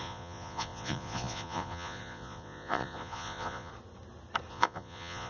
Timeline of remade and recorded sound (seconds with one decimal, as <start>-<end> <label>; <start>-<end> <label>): 0.0-3.7 remade; 3.7-4.5 recorded; 4.5-5.3 remade